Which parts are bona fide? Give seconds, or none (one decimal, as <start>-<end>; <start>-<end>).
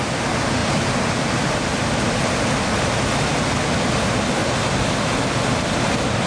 0.0-0.6; 2.3-6.3